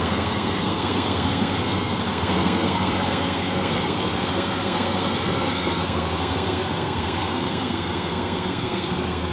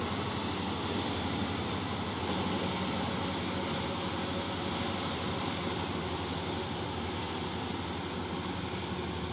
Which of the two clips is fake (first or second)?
first